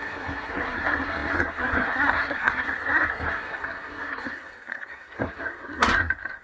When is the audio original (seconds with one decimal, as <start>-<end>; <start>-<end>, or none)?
none